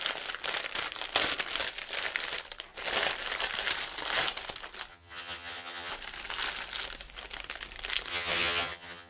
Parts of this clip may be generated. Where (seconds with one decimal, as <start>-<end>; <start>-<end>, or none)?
4.9-5.9; 8.1-9.1